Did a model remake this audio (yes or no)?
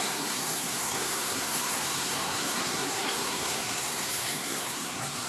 yes